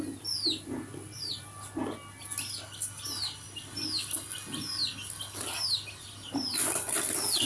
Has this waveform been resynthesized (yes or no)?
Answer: no